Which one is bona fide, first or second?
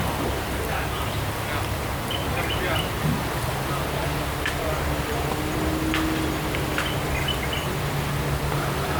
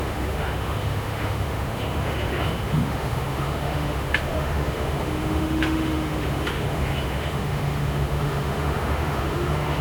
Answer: first